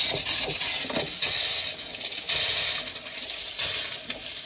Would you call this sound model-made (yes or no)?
no